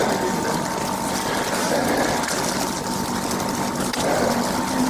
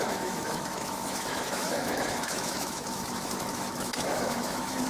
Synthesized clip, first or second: second